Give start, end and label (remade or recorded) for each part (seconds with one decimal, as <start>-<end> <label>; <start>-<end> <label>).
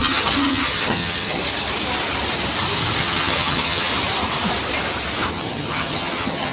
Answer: 0.0-1.4 remade; 1.4-3.0 recorded; 3.0-3.9 remade; 3.9-5.3 recorded; 5.3-6.5 remade